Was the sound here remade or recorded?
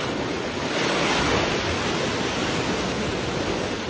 recorded